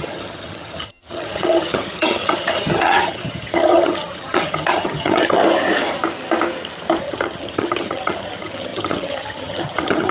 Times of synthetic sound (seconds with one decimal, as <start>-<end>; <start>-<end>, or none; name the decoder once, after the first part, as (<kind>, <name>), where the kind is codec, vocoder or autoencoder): 0.0-5.4 (vocoder, HiFi-GAN); 7.0-10.1